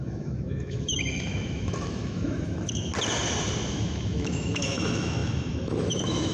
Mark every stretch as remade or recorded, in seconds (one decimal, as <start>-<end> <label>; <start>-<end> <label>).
0.0-2.9 remade; 2.9-3.7 recorded; 3.7-6.3 remade